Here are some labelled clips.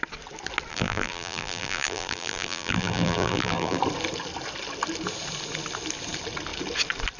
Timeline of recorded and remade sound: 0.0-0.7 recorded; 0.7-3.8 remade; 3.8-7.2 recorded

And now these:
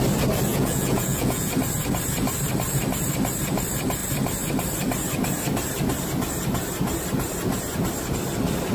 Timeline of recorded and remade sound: 0.0-0.5 recorded; 0.5-1.5 remade; 1.5-8.7 recorded

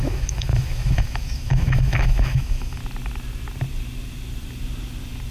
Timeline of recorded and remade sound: 0.0-2.8 remade; 2.8-5.3 recorded

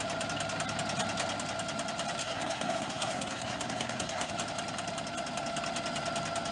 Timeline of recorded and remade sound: 0.0-2.2 recorded; 2.2-4.3 remade; 4.3-6.5 recorded